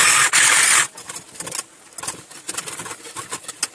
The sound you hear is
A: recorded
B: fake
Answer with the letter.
A